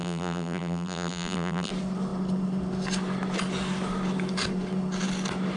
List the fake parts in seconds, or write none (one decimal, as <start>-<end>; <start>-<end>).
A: 0.0-1.7